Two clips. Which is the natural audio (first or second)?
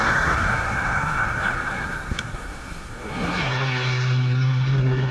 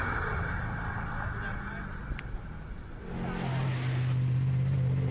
second